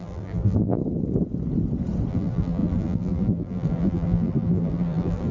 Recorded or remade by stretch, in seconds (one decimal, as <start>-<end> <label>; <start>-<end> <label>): 0.0-0.8 remade; 0.8-2.1 recorded; 2.1-5.3 remade